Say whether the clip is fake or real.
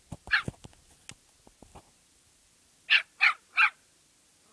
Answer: real